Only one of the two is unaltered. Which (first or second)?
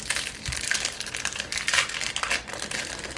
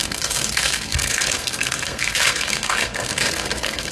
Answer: first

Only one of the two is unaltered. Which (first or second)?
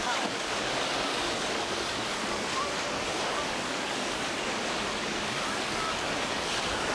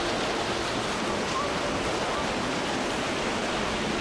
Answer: second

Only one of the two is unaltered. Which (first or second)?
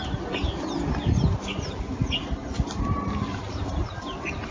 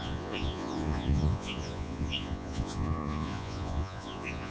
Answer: first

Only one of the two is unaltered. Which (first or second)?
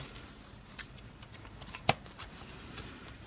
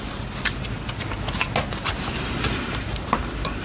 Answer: second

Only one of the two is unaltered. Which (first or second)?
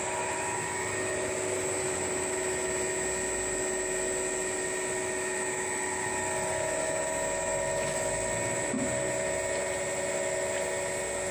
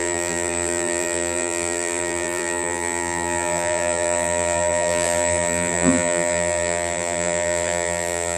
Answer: first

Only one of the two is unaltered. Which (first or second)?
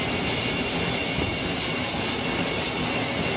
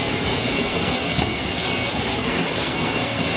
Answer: first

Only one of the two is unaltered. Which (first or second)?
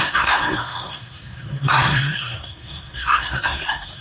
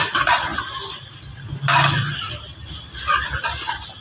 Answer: second